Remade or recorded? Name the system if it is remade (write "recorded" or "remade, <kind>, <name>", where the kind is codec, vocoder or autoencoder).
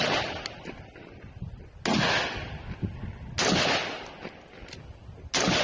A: recorded